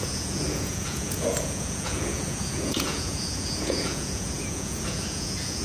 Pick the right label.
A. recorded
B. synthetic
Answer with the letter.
B